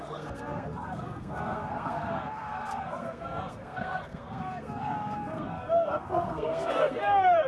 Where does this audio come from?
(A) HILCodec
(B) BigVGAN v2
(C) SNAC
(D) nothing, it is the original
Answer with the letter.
C